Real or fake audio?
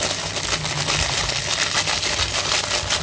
real